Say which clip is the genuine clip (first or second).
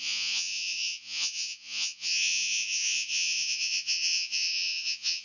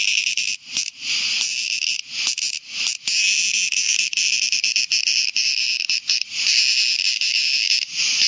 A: second